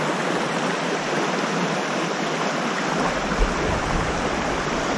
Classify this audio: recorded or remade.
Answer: recorded